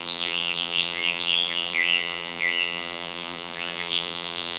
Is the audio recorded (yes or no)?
no